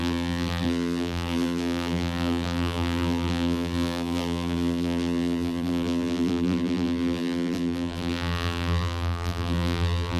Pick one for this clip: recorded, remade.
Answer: remade